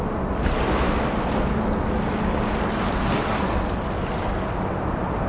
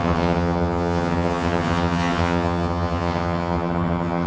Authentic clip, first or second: first